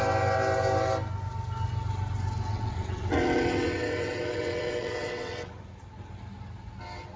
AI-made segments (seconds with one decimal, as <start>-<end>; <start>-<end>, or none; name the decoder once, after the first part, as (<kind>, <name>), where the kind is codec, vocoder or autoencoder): 2.5-5.5 (vocoder, WaveNeXt)